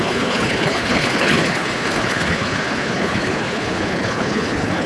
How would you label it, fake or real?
fake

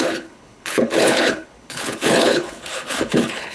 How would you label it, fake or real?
fake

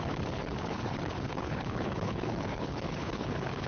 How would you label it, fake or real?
fake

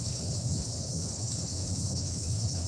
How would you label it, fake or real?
fake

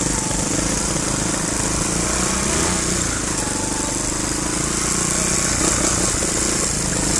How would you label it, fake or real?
real